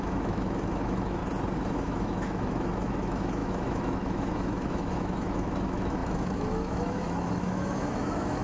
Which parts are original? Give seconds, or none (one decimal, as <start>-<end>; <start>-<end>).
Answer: 1.2-1.7